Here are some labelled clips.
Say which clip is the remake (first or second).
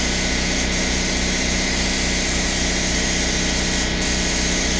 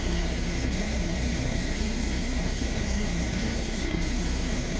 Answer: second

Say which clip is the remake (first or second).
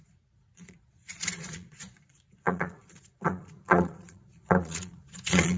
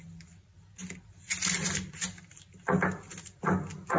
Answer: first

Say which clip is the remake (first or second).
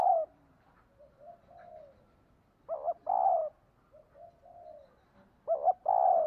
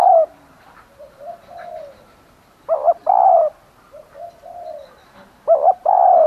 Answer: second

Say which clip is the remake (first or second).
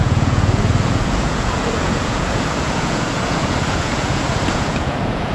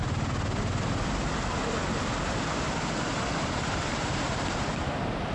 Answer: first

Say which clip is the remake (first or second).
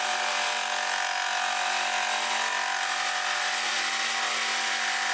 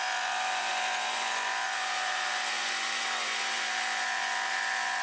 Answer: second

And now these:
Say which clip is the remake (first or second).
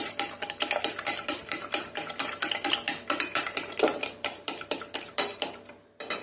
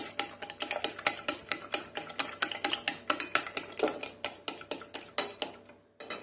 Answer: first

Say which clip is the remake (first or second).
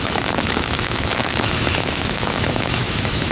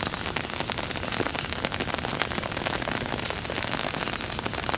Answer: first